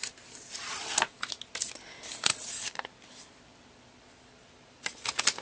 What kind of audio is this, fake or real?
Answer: real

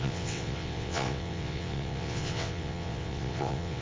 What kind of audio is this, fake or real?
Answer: fake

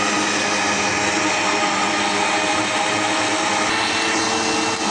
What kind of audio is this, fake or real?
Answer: real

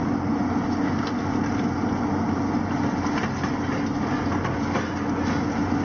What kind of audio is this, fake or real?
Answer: real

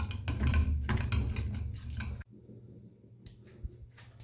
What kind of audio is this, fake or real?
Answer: real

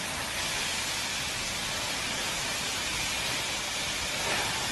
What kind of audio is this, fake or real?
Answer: real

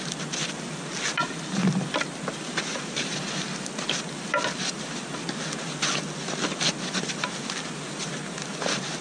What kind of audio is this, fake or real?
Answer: real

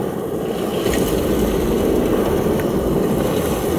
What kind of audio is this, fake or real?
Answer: real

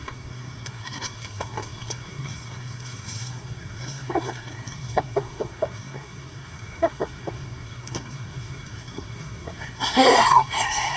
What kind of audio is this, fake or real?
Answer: fake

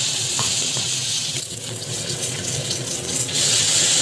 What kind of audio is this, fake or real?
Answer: fake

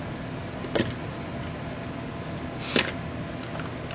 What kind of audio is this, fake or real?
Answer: real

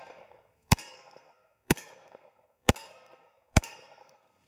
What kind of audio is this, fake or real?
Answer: fake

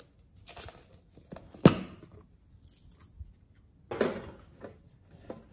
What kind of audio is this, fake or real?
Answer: real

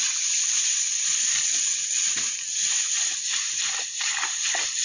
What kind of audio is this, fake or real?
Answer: fake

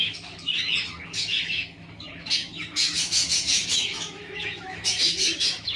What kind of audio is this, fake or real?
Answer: fake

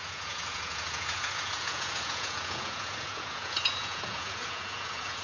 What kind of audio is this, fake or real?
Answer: fake